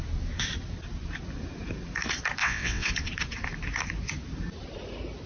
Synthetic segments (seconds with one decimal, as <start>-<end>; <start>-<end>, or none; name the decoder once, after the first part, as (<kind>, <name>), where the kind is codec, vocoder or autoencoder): 2.4-2.9 (vocoder, WaveNeXt)